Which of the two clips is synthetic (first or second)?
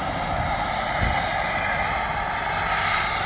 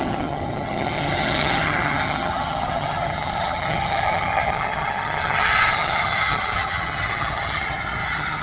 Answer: second